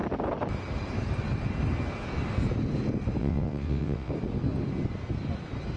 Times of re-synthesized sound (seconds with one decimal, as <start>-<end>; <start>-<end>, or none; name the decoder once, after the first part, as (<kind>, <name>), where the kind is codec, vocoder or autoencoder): 3.2-4.1 (vocoder, WaveNeXt)